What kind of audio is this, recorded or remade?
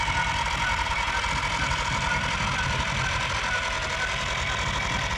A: recorded